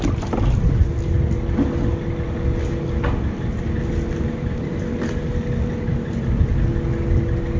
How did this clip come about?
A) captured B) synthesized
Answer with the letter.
A